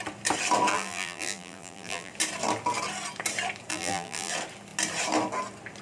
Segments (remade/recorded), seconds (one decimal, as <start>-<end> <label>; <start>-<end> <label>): 0.0-0.7 recorded; 0.7-2.1 remade; 2.1-3.7 recorded; 3.7-4.3 remade; 4.3-5.8 recorded